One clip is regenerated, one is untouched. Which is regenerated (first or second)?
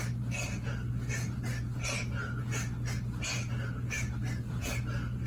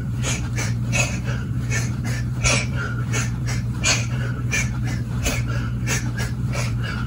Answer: second